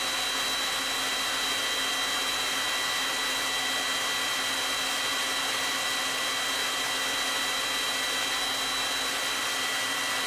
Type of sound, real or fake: real